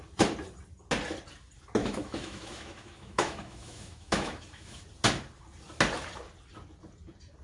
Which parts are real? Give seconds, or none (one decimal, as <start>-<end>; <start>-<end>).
0.0-1.8; 4.8-7.4